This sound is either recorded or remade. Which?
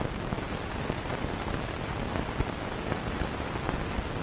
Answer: recorded